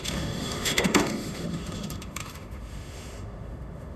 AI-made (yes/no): yes